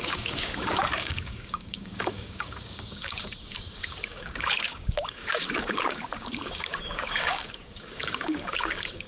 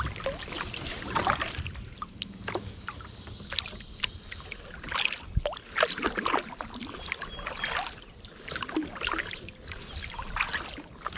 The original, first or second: second